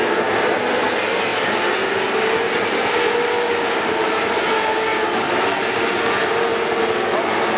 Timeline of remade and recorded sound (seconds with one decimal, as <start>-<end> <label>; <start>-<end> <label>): 0.0-7.6 recorded